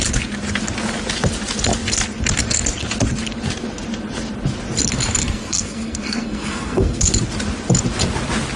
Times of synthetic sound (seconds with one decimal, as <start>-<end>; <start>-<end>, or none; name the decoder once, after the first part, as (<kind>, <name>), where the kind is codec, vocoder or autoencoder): 5.2-7.0 (codec, SNAC)